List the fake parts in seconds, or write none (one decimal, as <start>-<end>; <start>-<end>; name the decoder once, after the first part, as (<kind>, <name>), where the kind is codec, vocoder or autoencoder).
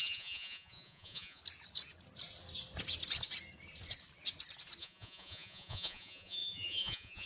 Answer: 0.0-1.4 (vocoder, Vocos); 4.8-7.3